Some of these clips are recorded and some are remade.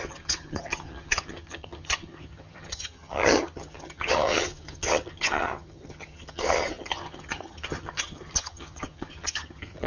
remade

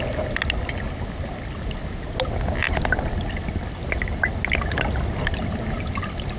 recorded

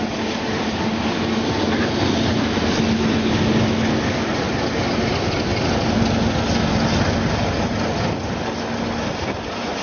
recorded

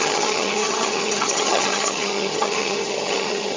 remade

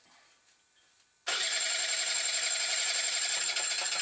recorded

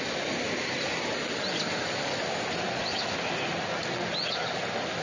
recorded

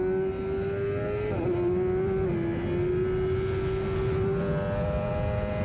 recorded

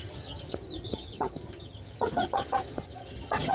remade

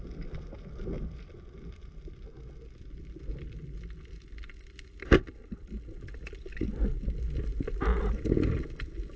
recorded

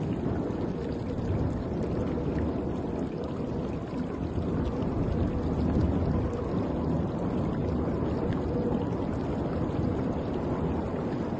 recorded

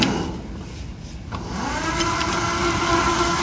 recorded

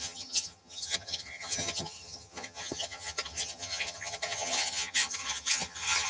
remade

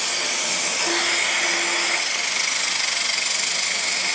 recorded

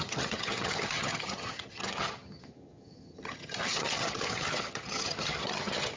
remade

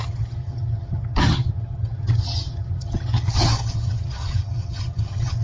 remade